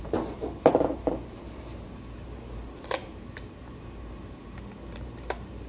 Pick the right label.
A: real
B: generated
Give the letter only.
B